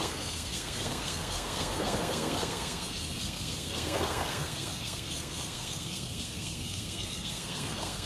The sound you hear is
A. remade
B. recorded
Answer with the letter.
A